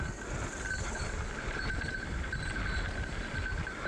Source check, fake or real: real